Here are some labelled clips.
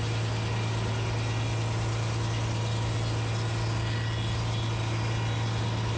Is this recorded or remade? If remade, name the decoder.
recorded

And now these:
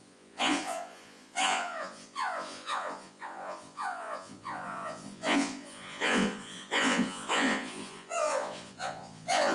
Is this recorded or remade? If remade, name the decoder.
remade, vocoder, Vocos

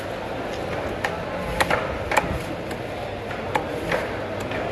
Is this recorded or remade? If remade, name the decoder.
recorded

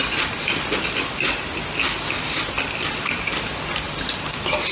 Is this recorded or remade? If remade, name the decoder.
recorded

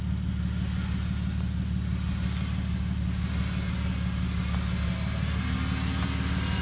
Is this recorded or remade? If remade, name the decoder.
recorded